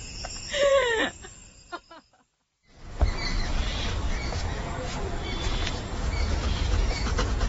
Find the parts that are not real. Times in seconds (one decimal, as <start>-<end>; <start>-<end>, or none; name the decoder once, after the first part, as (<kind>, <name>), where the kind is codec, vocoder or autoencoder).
0.0-0.7 (vocoder, Vocos); 4.1-7.5

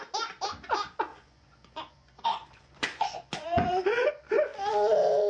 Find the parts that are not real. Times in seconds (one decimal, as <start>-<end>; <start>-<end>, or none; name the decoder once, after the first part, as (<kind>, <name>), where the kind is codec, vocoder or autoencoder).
1.1-4.1 (vocoder, Vocos)

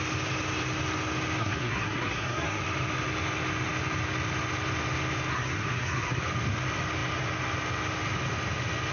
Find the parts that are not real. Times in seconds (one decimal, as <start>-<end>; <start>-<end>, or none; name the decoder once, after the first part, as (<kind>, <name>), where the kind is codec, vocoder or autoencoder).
1.4-2.6 (codec, SNAC); 5.3-6.2

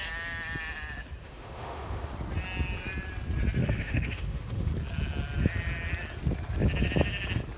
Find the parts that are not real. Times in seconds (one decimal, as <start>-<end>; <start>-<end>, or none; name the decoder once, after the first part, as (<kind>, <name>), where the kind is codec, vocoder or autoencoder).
1.2-2.1 (autoencoder, DAC-VAE); 3.6-4.7

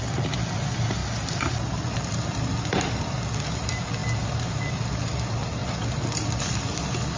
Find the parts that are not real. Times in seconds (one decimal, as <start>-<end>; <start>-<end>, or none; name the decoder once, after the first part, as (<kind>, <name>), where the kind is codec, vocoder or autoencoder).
none

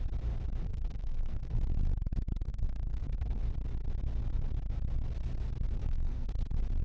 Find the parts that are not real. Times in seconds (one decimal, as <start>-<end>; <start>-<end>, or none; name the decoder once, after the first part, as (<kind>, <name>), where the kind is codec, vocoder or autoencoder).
0.6-1.6 (codec, SNAC); 2.5-3.4; 5.8-6.3

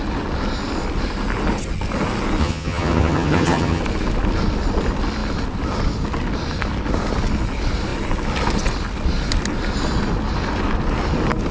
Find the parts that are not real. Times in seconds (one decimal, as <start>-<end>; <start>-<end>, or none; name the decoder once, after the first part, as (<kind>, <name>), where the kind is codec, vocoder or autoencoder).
2.4-3.8 (vocoder, HiFi-GAN)